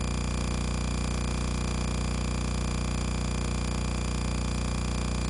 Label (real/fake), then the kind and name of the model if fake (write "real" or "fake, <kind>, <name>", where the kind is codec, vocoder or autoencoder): real